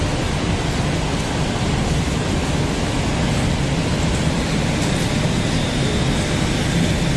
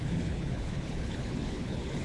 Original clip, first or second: first